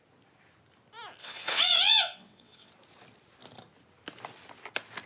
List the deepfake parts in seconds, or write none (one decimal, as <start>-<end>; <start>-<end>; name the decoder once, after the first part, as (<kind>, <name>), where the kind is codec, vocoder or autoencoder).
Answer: 1.2-2.7 (vocoder, WaveNeXt)